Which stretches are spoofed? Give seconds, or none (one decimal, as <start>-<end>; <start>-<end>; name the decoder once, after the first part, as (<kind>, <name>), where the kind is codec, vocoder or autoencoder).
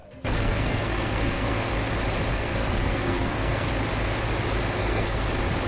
0.0-1.7 (codec, SNAC); 2.3-3.7; 4.8-5.3